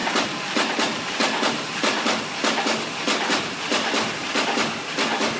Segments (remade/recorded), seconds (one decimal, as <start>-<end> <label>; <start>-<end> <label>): 0.0-2.2 remade; 2.2-3.7 recorded; 3.7-4.4 remade; 4.4-5.4 recorded